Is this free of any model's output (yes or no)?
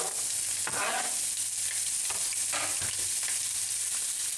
yes